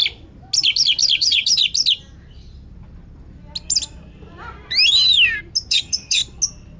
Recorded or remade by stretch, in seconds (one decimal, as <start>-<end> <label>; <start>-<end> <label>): 0.0-1.2 recorded; 1.2-1.6 remade; 1.6-5.7 recorded; 5.7-6.2 remade; 6.2-6.8 recorded